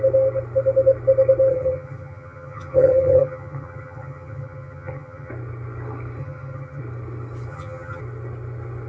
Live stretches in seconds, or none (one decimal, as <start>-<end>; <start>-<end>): 0.0-1.5; 5.3-6.2; 6.8-7.5; 8.0-8.9